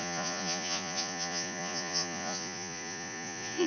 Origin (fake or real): fake